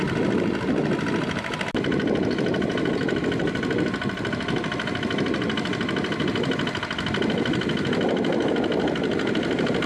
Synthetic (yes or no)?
no